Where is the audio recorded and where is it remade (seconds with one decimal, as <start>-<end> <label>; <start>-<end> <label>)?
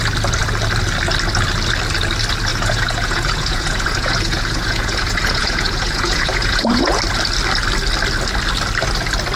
0.0-2.5 recorded; 2.5-7.0 remade; 7.0-9.4 recorded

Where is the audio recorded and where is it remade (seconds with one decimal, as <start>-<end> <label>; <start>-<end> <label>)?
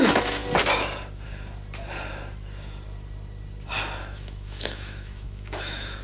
0.0-0.4 remade; 0.4-4.0 recorded; 4.0-6.0 remade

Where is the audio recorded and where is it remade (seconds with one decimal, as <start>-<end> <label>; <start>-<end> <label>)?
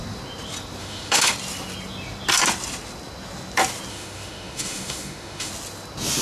0.0-0.8 recorded; 0.8-1.3 remade; 1.3-3.9 recorded; 3.9-5.5 remade; 5.5-6.2 recorded